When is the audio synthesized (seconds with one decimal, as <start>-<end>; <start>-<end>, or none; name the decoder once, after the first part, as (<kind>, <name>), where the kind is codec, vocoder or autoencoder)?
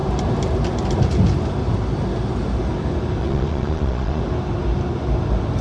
3.2-4.2 (vocoder, Vocos)